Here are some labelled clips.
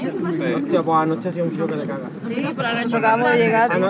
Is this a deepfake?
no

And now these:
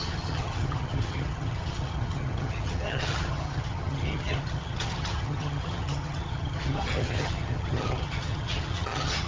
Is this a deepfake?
yes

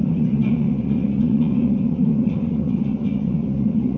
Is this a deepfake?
yes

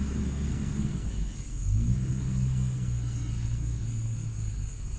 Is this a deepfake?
yes